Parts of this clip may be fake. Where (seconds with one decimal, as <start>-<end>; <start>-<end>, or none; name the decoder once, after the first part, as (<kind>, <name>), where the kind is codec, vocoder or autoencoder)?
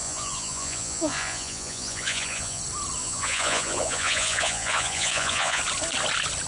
0.0-2.6 (vocoder, Vocos); 3.0-5.6